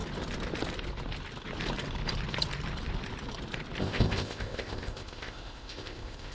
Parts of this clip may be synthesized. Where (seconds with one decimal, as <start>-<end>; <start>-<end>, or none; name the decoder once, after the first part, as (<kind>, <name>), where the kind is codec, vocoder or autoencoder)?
3.8-6.3 (codec, ZipCodec)